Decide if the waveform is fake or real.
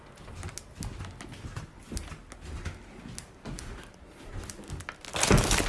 real